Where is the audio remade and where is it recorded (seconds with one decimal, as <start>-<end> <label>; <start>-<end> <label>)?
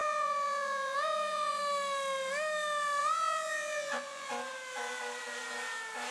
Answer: 0.0-1.6 remade; 1.6-3.0 recorded; 3.0-4.3 remade; 4.3-6.1 recorded